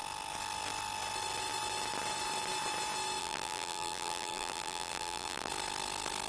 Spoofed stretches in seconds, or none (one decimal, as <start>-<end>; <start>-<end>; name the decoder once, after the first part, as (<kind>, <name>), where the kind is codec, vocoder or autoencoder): 3.2-5.5 (vocoder, BigVGAN v2)